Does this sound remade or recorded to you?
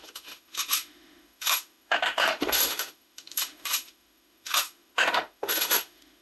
remade